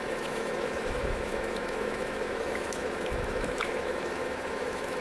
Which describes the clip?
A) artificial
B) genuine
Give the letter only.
A